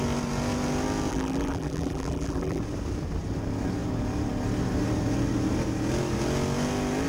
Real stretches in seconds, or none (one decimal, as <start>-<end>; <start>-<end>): 0.0-1.1; 2.6-7.1